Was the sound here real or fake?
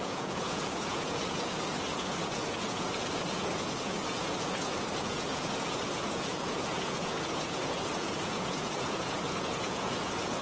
fake